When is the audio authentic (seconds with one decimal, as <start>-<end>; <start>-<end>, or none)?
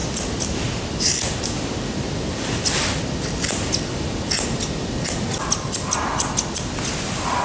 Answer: 0.0-7.4